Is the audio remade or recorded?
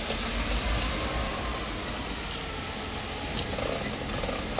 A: recorded